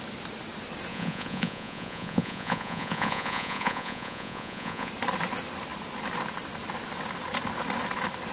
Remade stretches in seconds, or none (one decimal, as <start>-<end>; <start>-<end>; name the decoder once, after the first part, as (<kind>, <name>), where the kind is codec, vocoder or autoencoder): 0.9-4.9 (vocoder, Vocos)